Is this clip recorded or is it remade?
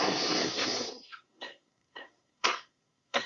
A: remade